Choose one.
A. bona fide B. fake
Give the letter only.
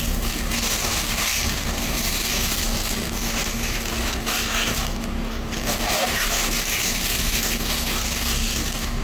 B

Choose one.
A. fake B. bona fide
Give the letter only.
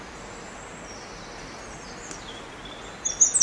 B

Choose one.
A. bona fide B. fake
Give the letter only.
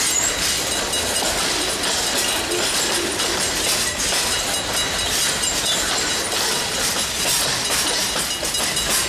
A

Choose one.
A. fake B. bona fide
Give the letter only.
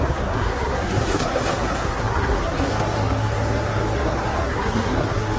A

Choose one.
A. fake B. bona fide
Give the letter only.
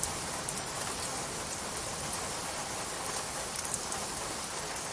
B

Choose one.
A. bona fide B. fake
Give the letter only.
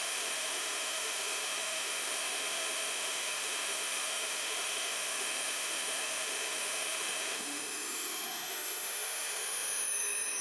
B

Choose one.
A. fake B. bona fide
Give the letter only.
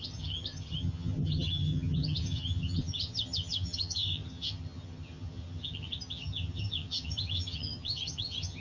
A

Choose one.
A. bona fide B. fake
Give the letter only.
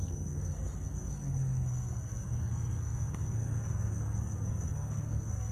B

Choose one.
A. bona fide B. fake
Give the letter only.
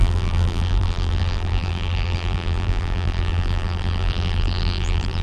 B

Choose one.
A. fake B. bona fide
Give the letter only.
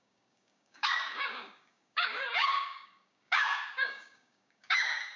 A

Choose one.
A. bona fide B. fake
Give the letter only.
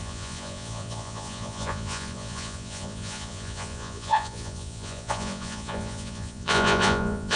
B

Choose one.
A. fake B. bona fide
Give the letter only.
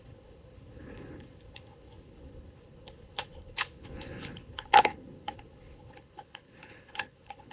A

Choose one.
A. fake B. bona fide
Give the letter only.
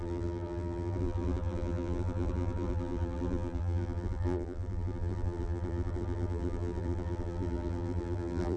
A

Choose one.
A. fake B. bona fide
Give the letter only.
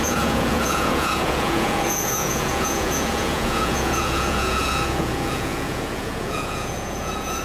A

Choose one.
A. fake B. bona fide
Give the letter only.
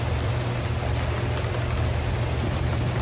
B